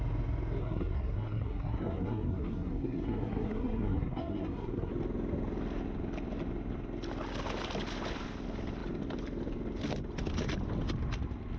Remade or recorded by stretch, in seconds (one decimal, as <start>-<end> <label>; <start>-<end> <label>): 0.0-0.6 recorded; 0.6-4.9 remade; 4.9-11.6 recorded